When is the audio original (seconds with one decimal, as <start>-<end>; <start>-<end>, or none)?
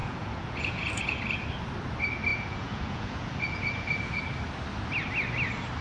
1.2-2.3; 4.2-5.8